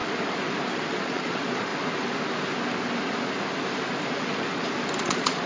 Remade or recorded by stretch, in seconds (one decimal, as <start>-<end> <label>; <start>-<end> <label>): 0.0-0.9 recorded; 0.9-1.7 remade; 1.7-5.0 recorded; 5.0-5.5 remade